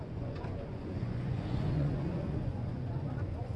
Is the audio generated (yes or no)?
yes